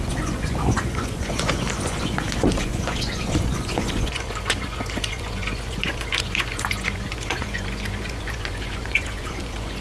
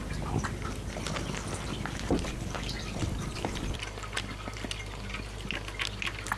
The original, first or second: second